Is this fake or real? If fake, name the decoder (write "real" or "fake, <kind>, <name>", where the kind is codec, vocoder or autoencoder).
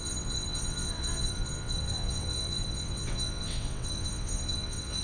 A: fake, vocoder, WaveNeXt